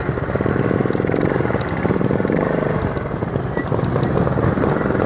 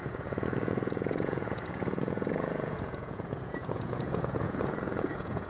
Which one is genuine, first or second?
first